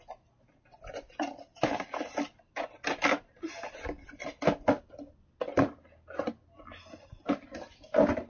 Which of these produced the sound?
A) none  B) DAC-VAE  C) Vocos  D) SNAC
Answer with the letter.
A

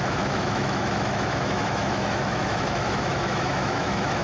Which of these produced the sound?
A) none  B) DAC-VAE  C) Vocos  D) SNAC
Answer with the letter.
B